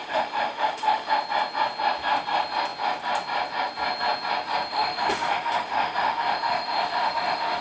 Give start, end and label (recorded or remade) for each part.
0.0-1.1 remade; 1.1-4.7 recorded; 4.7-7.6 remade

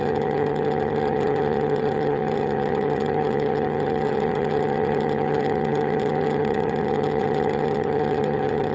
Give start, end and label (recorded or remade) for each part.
0.0-8.7 remade

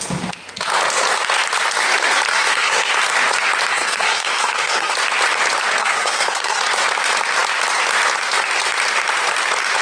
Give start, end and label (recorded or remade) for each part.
0.0-2.3 recorded; 2.3-2.9 remade; 2.9-3.7 recorded; 3.7-4.9 remade; 4.9-5.8 recorded; 5.8-6.6 remade; 6.6-9.8 recorded

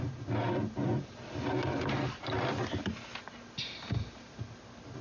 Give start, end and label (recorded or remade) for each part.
0.0-5.0 recorded